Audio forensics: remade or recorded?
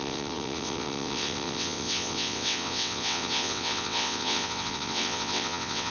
remade